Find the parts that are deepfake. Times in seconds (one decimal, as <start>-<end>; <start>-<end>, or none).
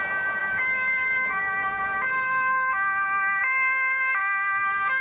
0.4-3.4; 4.2-5.0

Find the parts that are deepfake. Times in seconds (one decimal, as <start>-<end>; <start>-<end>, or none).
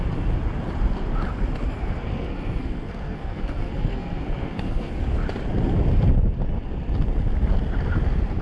1.7-4.9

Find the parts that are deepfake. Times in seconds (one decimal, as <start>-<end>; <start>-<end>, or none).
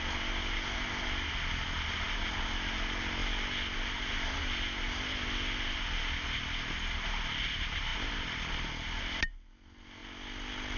none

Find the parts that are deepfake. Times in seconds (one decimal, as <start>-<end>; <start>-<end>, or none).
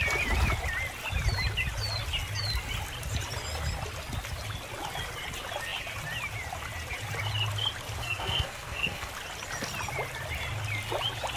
8.0-9.1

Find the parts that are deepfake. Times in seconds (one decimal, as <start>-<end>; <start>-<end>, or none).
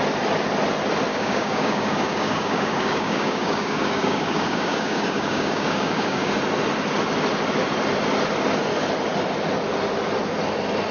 1.1-6.3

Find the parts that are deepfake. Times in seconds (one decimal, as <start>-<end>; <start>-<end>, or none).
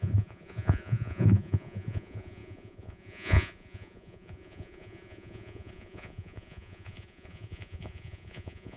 0.0-8.8